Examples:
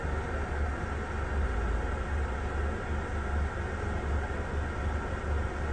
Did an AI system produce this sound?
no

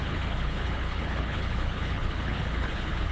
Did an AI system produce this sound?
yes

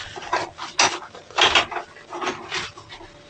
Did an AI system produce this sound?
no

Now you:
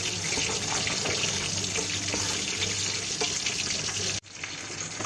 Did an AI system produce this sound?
no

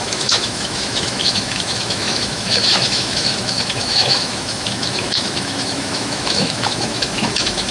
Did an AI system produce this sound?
yes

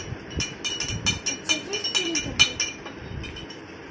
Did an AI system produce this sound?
no